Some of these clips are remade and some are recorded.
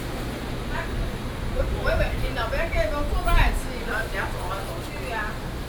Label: recorded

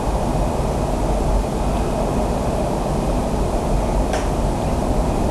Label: recorded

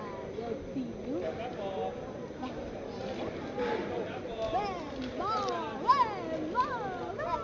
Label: recorded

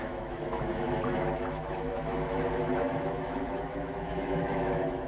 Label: remade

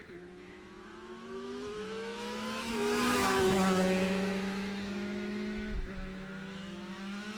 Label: remade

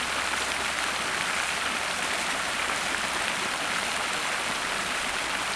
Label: recorded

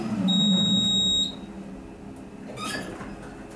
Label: recorded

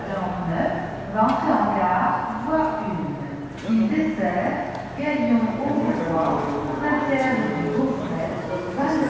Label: recorded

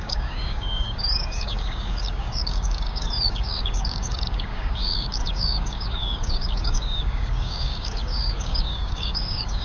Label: remade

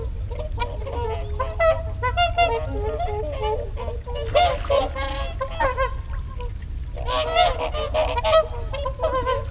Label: recorded